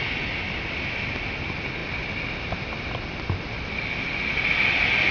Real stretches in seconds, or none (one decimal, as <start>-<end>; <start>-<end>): 0.0-5.1